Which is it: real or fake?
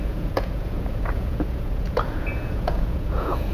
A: fake